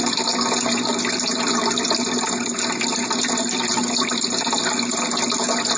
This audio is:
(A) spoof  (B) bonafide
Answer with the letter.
B